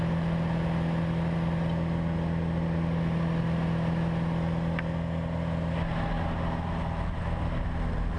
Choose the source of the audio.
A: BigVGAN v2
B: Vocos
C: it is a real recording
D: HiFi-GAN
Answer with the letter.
C